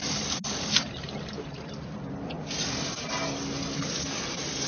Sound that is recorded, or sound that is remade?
recorded